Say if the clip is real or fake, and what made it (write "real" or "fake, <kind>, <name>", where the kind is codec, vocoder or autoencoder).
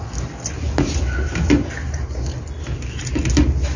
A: real